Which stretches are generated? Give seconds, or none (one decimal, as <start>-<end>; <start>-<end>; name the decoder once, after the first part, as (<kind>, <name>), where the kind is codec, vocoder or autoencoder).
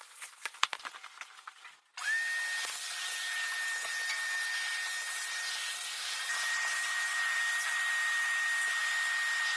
none